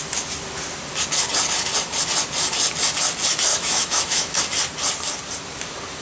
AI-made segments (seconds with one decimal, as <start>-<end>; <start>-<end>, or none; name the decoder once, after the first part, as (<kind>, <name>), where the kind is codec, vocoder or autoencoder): 3.5-4.4 (autoencoder, DAC-VAE)